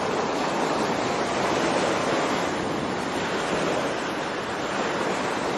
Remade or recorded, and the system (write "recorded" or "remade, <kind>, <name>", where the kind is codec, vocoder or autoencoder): recorded